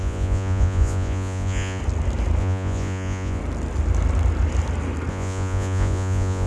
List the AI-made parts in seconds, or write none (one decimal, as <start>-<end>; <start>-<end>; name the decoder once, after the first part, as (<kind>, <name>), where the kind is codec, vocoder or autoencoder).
0.0-1.8 (vocoder, Vocos); 2.4-3.4; 5.1-6.5